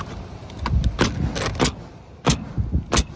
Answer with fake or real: real